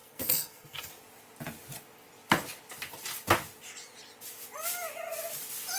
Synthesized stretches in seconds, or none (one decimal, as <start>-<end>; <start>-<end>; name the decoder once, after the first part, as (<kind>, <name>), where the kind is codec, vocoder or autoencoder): 0.0-0.9 (codec, SNAC)